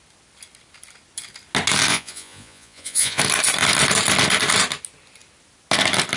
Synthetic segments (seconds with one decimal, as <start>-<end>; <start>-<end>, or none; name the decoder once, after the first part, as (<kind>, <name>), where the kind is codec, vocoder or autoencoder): 1.9-3.2 (vocoder, Vocos)